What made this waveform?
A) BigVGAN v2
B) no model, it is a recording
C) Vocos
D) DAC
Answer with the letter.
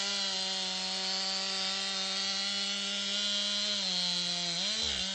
B